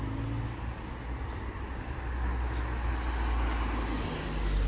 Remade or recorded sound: recorded